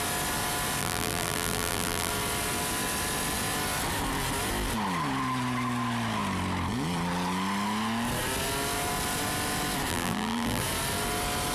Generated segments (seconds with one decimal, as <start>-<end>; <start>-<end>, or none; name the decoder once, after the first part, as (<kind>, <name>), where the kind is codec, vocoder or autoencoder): 0.8-2.1 (vocoder, BigVGAN v2); 9.9-10.6